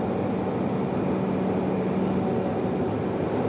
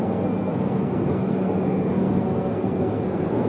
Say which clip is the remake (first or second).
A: second